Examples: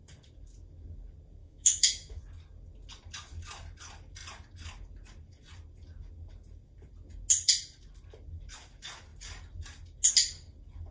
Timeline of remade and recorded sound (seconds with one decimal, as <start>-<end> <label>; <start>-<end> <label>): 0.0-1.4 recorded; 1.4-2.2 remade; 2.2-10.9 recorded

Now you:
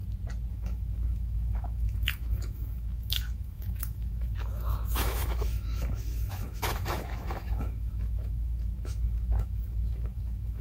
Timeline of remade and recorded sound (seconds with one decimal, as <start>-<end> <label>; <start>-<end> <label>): 0.0-0.5 recorded; 0.5-10.6 remade

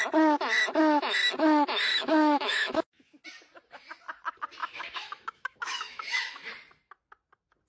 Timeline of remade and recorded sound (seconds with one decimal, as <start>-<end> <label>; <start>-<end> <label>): 0.0-1.9 recorded; 1.9-3.2 remade; 3.2-4.6 recorded; 4.6-6.5 remade; 6.5-7.7 recorded

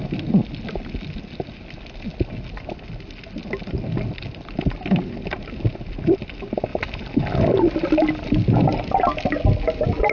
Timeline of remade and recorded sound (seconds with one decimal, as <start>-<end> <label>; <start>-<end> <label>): 0.0-10.1 recorded

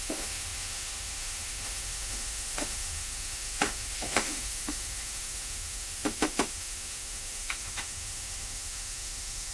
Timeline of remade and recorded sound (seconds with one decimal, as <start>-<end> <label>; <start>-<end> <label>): 0.0-9.5 remade

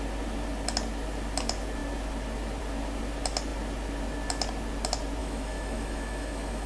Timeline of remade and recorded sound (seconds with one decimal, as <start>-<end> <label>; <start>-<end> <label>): 0.0-5.2 recorded; 5.2-6.7 remade